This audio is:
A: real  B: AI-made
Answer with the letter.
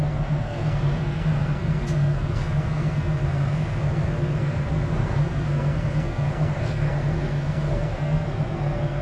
B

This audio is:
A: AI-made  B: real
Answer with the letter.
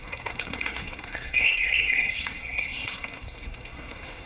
A